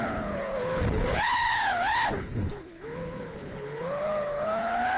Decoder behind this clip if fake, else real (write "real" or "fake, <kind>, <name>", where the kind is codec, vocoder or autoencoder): fake, codec, HILCodec